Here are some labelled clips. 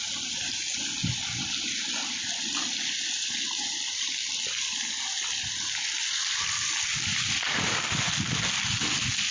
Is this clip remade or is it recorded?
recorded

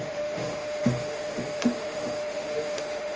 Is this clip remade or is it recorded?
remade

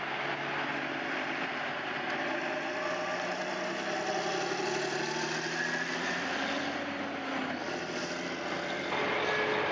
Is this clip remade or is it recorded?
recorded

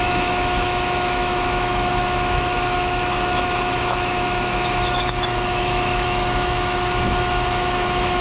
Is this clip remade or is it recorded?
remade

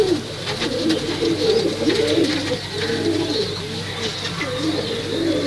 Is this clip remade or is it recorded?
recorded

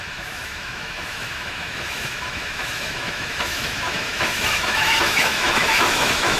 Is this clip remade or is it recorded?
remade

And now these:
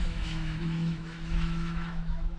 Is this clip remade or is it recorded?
remade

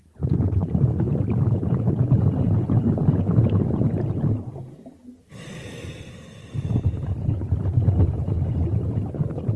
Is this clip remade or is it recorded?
recorded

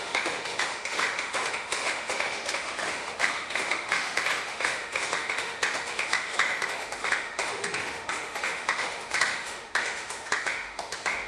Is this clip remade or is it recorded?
remade